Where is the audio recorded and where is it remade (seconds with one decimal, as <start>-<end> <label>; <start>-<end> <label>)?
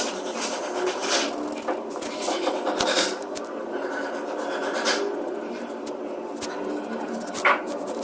0.0-8.0 recorded